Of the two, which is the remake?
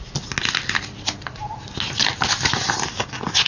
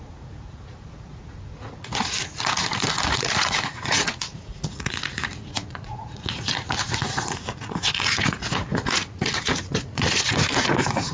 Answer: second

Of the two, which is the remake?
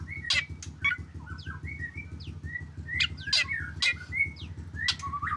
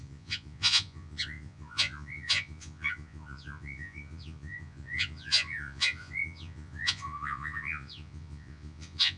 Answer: second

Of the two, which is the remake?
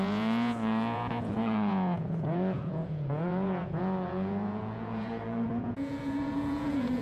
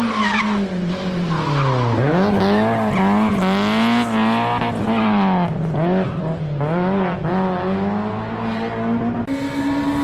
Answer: first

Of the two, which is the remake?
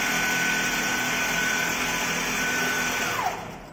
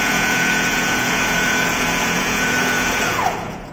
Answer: second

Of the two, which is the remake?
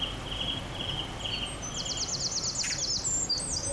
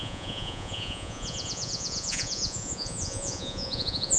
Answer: second